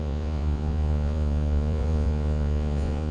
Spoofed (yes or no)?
yes